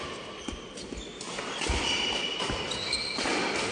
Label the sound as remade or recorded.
recorded